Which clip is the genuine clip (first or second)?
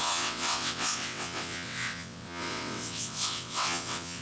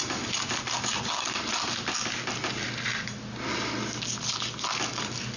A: second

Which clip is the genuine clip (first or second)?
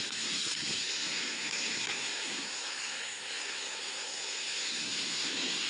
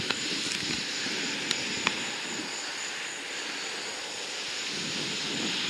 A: second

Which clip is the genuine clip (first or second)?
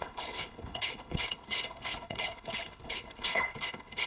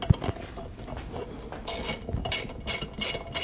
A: second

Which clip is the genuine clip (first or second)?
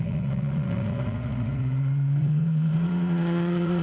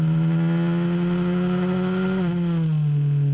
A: second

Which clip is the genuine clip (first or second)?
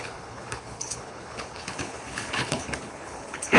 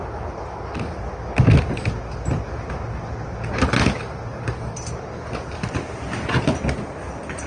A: second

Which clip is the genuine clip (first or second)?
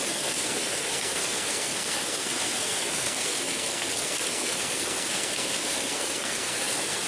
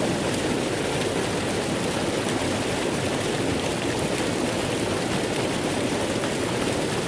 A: second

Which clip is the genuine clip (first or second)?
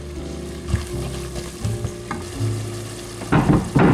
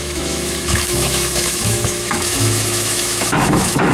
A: first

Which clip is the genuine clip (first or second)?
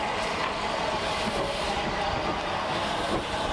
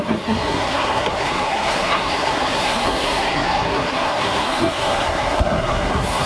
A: first